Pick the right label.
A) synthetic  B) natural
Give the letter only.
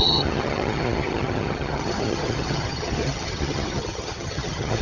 A